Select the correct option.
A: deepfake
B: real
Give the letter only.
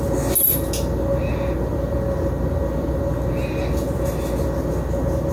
B